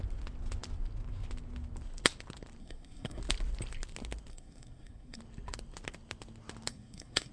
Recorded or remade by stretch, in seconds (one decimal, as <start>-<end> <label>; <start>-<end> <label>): 0.0-2.6 recorded; 2.6-3.2 remade; 3.2-4.3 recorded; 4.3-5.2 remade; 5.2-6.7 recorded; 6.7-7.3 remade